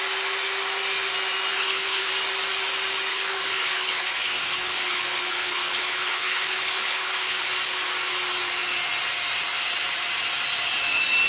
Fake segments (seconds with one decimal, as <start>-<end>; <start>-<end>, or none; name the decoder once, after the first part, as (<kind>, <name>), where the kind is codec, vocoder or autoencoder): 1.5-2.1 (codec, HILCodec); 3.1-7.5